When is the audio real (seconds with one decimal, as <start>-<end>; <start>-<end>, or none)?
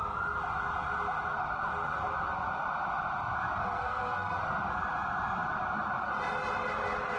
0.0-3.6; 4.4-7.2